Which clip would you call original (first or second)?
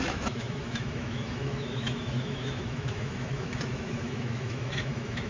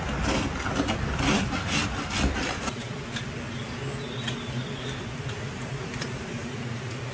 second